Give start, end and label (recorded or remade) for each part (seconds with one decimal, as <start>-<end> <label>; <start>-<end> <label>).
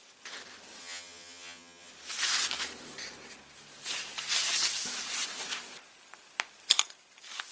0.0-0.8 recorded; 0.8-1.9 remade; 1.9-7.5 recorded